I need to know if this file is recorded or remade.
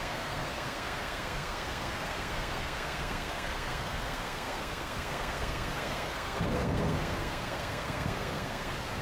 remade